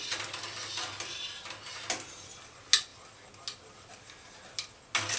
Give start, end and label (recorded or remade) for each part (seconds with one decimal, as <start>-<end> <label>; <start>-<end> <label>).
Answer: 0.0-5.2 recorded